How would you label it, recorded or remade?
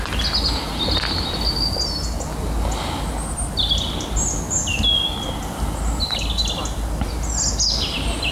recorded